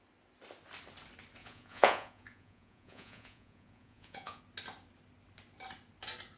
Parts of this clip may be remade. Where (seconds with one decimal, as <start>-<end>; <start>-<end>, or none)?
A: 1.4-4.4